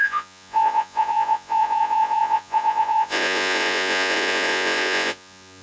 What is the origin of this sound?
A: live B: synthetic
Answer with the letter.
B